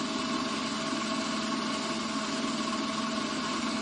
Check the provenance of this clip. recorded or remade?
recorded